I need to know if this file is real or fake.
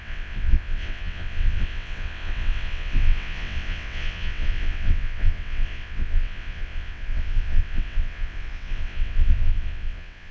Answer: fake